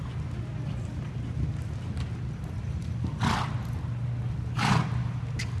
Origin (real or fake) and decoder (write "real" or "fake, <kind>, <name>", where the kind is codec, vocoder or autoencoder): real